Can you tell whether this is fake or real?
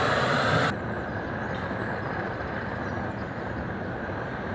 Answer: real